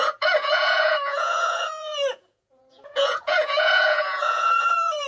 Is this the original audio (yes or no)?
no